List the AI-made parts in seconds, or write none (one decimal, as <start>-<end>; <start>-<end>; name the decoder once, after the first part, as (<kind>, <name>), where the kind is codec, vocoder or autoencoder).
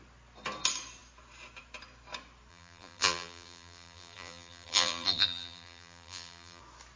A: 2.5-6.6 (vocoder, BigVGAN v2)